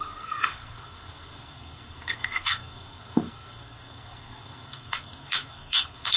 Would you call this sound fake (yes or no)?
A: yes